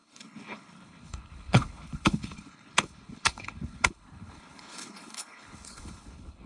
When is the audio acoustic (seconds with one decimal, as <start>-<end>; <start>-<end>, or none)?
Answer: none